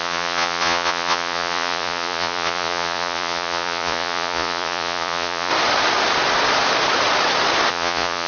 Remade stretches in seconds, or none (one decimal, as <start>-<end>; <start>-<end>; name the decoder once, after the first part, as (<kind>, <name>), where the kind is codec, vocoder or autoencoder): 0.0-5.5 (vocoder, Vocos); 7.7-8.3